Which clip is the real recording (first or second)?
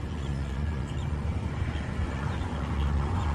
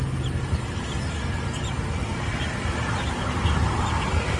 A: second